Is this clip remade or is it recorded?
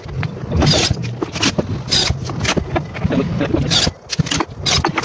recorded